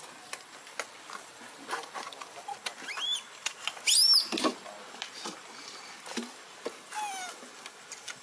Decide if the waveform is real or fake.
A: real